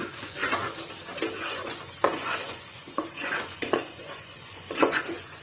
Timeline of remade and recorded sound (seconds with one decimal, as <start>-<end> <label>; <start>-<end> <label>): 0.0-0.4 remade; 0.4-1.5 recorded; 1.5-5.4 remade